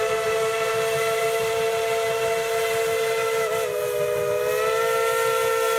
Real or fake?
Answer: real